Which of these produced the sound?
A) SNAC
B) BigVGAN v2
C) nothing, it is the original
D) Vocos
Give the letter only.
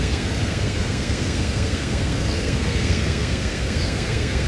A